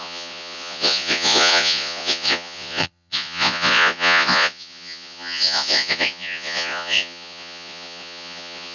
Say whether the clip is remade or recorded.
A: remade